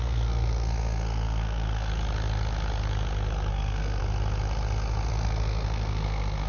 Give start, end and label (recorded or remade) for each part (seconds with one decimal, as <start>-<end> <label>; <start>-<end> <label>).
0.0-1.9 remade; 1.9-3.5 recorded; 3.5-4.0 remade; 4.0-5.1 recorded; 5.1-6.5 remade